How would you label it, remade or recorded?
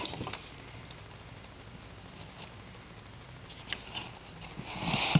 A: recorded